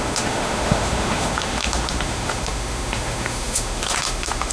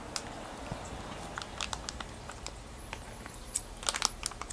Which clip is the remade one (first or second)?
first